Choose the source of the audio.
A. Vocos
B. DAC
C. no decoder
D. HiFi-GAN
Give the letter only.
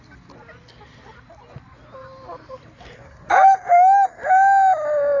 C